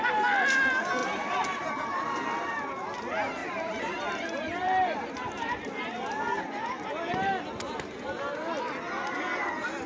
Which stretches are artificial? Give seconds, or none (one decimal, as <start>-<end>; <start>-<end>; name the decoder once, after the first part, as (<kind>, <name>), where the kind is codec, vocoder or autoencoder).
1.0-2.7 (vocoder, BigVGAN v2); 3.4-6.4